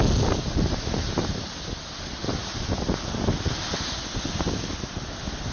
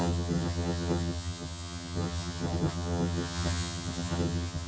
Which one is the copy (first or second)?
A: second